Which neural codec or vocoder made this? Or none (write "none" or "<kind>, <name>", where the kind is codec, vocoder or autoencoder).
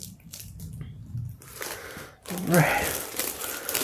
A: vocoder, BigVGAN v2